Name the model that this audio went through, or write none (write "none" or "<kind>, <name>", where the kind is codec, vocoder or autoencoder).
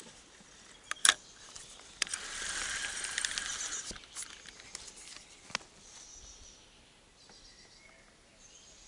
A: none